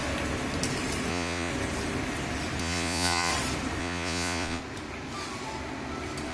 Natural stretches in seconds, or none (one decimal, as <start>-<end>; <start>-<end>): 0.0-1.1; 1.5-2.6; 3.3-3.8; 4.6-6.3